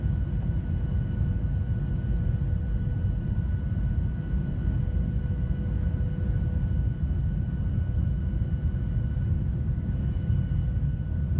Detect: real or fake real